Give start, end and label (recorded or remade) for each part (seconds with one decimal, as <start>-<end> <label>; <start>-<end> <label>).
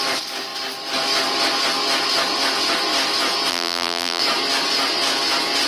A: 0.0-3.5 recorded; 3.5-4.2 remade; 4.2-5.7 recorded